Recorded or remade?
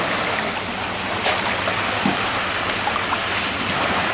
recorded